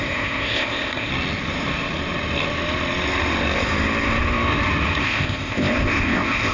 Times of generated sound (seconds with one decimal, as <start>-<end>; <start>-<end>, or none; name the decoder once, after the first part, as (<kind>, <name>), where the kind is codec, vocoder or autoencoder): 0.0-1.1 (codec, ZipCodec); 5.0-6.5